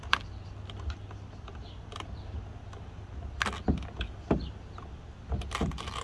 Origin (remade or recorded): recorded